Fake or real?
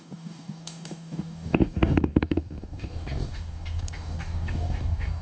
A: fake